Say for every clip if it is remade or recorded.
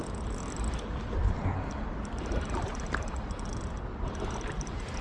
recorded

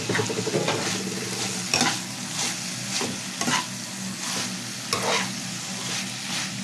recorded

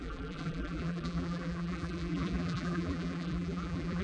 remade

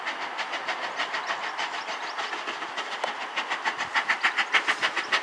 recorded